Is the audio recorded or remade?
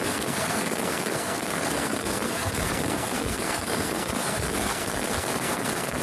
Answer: remade